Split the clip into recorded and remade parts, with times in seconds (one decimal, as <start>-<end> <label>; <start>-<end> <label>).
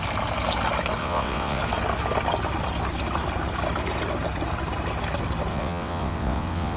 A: 0.0-1.0 recorded; 1.0-1.6 remade; 1.6-5.5 recorded; 5.5-6.8 remade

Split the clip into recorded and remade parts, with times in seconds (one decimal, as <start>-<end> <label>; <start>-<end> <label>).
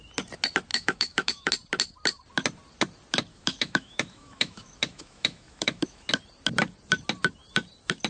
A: 0.0-0.7 recorded; 0.7-1.5 remade; 1.5-3.3 recorded; 3.3-6.1 remade; 6.1-8.1 recorded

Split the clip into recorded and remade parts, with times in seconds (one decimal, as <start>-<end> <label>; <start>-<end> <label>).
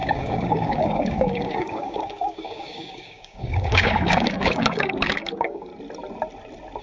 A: 0.0-5.7 remade; 5.7-6.8 recorded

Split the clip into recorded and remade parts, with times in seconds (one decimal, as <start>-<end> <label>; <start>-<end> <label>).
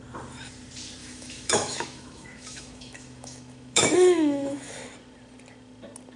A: 0.0-1.0 recorded; 1.0-4.7 remade; 4.7-6.2 recorded